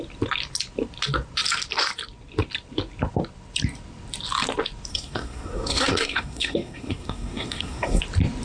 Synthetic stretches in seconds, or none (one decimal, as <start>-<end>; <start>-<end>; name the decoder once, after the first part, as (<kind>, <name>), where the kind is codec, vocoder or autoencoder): 4.9-8.0 (codec, SNAC)